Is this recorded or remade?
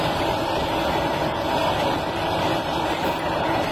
recorded